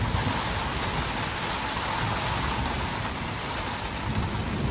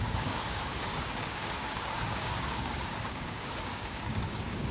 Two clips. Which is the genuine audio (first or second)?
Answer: first